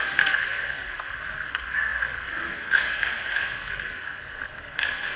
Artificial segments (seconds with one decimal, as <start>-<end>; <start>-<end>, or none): 0.0-5.2